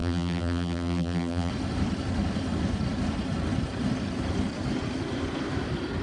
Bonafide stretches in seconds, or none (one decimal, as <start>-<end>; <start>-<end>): 1.5-6.0